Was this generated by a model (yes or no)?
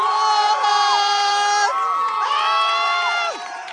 yes